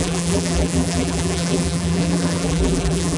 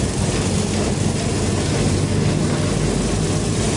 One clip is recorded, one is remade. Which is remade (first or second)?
first